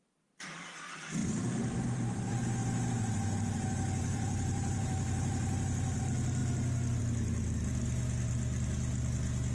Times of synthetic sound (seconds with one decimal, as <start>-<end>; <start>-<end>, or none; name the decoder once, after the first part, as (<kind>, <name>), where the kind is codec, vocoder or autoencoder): 1.2-6.0 (vocoder, BigVGAN v2)